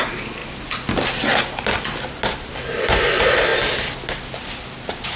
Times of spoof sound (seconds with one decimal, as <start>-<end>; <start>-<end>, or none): none